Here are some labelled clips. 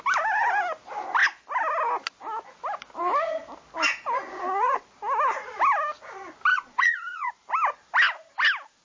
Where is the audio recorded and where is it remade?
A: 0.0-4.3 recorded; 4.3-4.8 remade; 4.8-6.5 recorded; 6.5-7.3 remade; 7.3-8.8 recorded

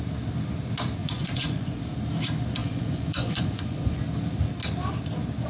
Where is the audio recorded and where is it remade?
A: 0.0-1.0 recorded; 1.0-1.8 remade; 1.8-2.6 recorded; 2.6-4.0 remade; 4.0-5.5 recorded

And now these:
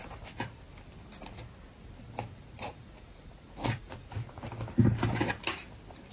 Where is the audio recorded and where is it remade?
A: 0.0-2.3 recorded; 2.3-4.4 remade; 4.4-6.1 recorded